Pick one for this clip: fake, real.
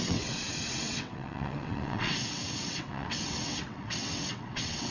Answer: fake